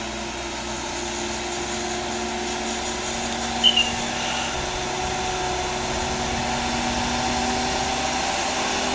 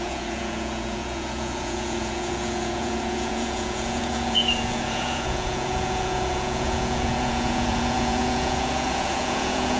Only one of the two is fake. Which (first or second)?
second